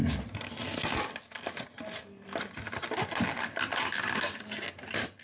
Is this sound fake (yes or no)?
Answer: no